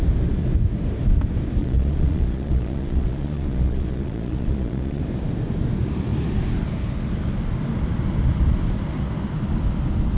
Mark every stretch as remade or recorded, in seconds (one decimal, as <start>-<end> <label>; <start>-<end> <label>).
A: 0.0-1.6 recorded; 1.6-5.0 remade; 5.0-10.2 recorded